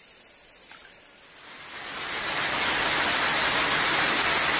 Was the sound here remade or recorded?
recorded